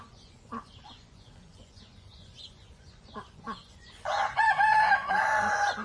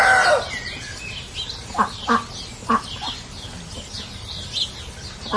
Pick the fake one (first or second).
first